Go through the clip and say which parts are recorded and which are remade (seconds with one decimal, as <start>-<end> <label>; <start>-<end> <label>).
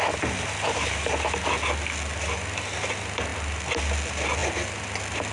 0.0-5.3 recorded